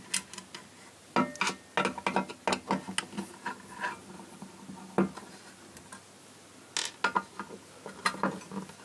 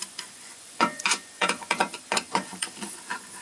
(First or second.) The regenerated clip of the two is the second